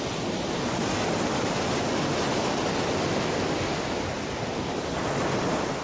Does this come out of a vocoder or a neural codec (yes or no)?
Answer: no